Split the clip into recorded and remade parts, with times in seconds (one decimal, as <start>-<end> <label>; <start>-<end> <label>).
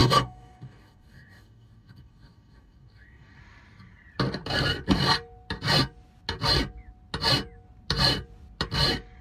0.0-3.4 remade; 3.4-9.2 recorded